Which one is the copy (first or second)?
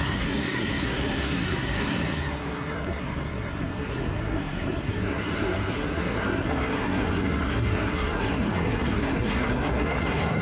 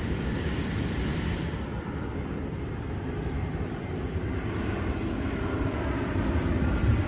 first